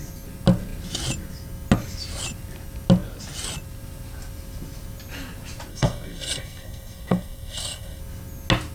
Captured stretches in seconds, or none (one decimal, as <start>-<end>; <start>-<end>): 0.0-5.7; 8.0-8.7